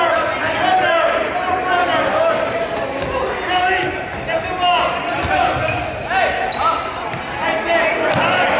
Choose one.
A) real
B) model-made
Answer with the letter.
A